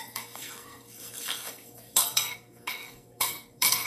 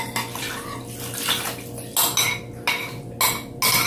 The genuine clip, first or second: second